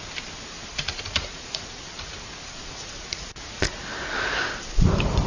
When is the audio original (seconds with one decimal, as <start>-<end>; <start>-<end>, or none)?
0.0-0.7; 3.3-5.3